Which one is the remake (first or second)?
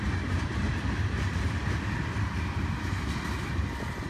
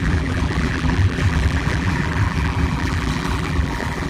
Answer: second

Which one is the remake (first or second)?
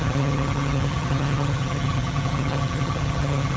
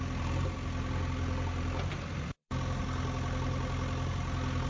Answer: first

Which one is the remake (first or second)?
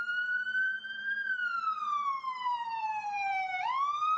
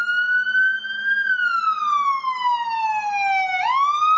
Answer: first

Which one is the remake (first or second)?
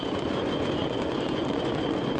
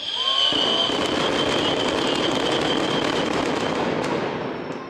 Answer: first